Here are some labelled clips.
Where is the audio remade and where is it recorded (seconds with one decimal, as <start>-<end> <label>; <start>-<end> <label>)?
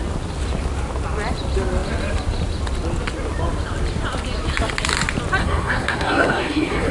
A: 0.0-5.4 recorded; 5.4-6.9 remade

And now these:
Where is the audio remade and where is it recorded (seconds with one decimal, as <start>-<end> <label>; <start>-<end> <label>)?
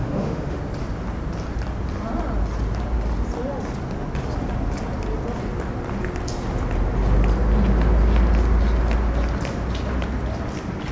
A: 0.0-0.6 remade; 0.6-10.9 recorded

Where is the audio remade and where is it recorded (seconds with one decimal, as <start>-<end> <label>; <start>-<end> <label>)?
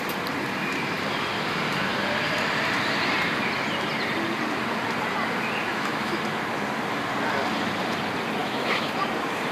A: 0.0-5.7 recorded; 5.7-6.2 remade; 6.2-8.4 recorded; 8.4-8.9 remade; 8.9-9.5 recorded